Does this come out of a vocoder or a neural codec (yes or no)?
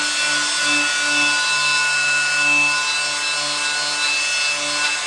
no